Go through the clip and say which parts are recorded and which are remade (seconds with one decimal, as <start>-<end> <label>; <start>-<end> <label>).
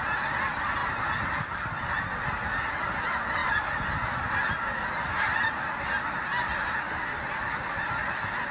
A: 0.0-8.5 recorded